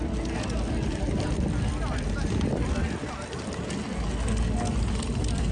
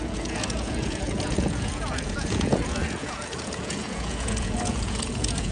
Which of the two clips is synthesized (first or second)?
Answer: second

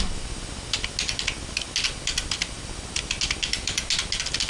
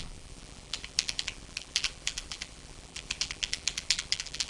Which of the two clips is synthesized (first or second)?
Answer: second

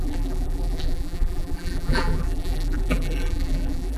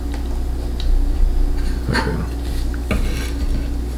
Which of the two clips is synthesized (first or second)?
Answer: first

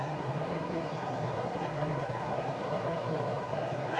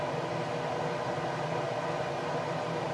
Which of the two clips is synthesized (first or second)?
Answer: first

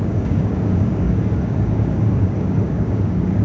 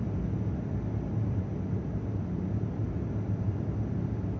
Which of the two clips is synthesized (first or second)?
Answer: first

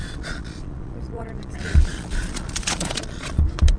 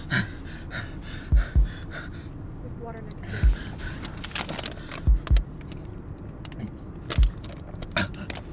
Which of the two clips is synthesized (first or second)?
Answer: first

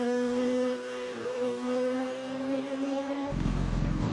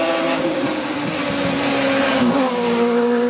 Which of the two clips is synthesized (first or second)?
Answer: first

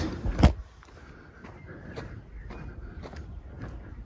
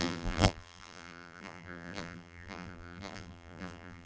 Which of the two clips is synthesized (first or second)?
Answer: second